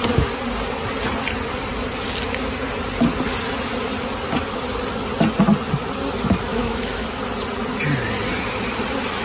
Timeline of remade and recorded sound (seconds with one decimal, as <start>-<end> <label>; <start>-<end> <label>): 0.0-6.5 recorded; 6.5-7.2 remade; 7.2-9.2 recorded